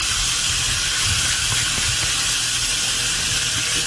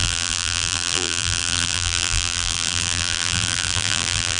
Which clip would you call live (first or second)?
first